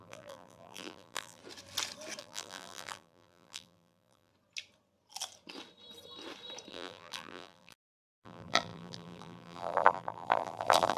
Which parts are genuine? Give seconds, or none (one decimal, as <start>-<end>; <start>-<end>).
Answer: 1.4-2.2; 4.3-6.7